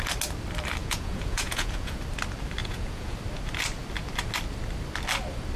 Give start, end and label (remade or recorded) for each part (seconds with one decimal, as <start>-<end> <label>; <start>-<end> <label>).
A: 0.0-0.8 recorded; 0.8-2.0 remade; 2.0-2.6 recorded; 2.6-3.1 remade; 3.1-5.6 recorded